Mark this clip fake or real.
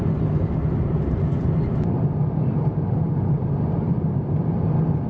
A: real